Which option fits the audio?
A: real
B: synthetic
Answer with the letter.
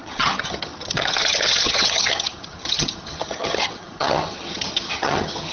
B